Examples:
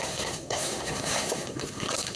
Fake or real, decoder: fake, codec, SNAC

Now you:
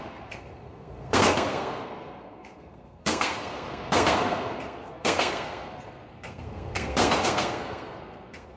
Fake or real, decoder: fake, codec, SNAC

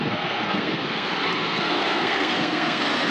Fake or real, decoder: fake, codec, SNAC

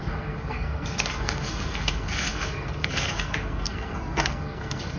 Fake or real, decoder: fake, codec, SNAC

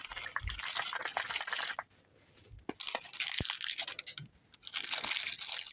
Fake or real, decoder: real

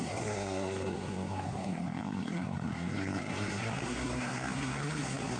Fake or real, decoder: fake, codec, SNAC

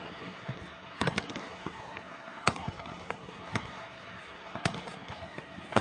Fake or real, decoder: fake, codec, SNAC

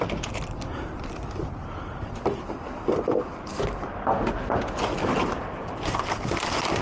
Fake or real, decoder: real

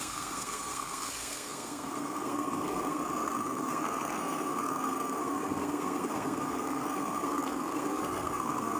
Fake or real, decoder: fake, codec, SNAC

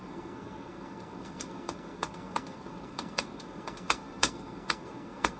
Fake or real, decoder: fake, codec, SNAC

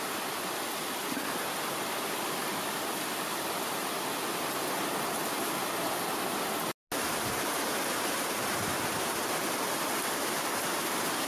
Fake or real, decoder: real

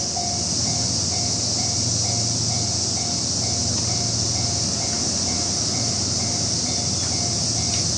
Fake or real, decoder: real